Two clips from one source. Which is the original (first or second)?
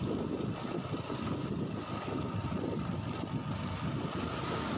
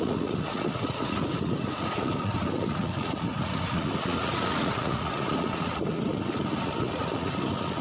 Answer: first